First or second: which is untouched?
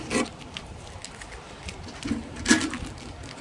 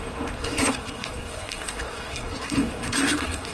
first